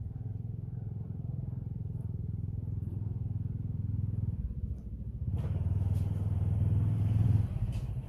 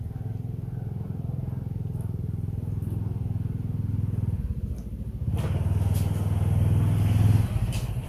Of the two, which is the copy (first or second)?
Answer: first